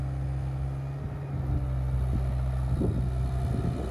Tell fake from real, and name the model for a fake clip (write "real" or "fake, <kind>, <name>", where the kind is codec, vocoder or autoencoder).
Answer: real